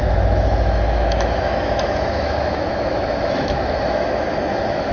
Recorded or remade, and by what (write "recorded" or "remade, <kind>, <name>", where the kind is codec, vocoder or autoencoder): remade, autoencoder, DAC-VAE